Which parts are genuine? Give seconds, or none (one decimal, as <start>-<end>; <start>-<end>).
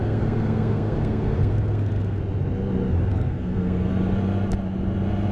2.2-3.1; 3.9-5.3